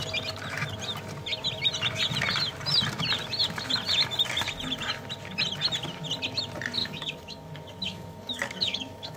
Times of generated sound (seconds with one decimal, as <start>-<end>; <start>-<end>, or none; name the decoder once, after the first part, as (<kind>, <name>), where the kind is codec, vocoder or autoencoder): 6.8-9.2 (codec, DAC)